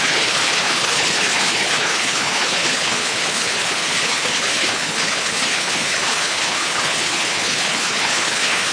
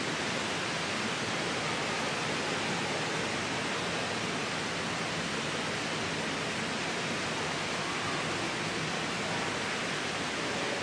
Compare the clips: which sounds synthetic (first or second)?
first